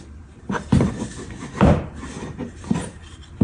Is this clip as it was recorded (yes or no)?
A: no